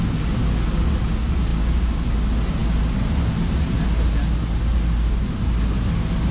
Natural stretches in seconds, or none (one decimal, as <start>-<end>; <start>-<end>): 0.0-6.3

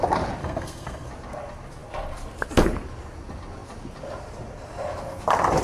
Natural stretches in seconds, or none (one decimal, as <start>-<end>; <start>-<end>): 0.0-0.4; 1.1-5.6

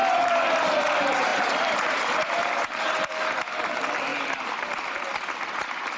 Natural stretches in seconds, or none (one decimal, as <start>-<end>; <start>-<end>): 0.0-1.3; 3.1-4.1; 5.0-6.0